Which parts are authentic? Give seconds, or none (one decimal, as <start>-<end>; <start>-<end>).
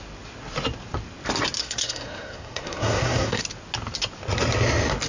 0.0-1.6; 3.4-5.1